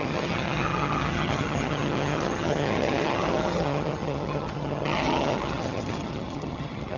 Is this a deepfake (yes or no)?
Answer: yes